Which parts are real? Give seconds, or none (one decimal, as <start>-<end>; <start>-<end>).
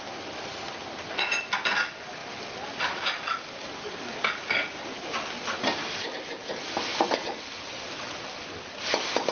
0.0-2.2; 3.6-6.9; 8.1-9.3